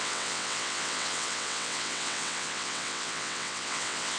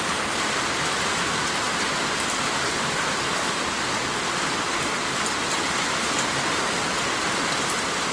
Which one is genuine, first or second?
second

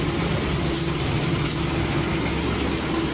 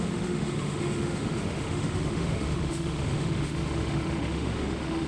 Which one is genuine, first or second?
first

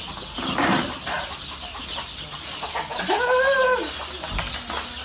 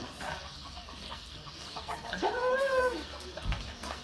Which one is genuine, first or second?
first